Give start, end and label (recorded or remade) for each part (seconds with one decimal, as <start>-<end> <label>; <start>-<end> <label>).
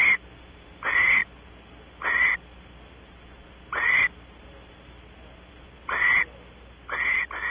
0.0-7.5 recorded